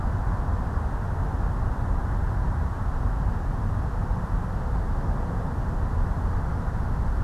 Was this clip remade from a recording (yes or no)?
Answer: no